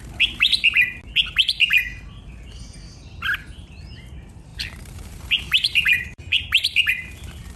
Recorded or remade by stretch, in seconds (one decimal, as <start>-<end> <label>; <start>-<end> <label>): 0.0-4.5 recorded; 4.5-6.9 remade; 6.9-7.6 recorded